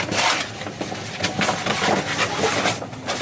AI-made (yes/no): no